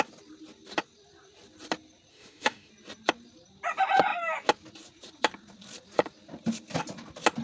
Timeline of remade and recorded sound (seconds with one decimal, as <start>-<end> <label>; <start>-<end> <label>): 0.0-2.1 recorded; 2.1-2.7 remade; 2.7-7.4 recorded